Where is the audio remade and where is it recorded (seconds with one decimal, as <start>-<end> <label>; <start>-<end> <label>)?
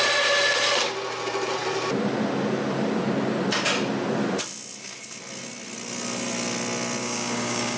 0.0-7.0 recorded; 7.0-7.8 remade